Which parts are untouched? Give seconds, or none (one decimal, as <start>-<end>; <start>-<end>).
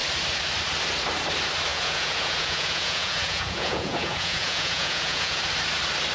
0.0-1.7; 5.4-6.1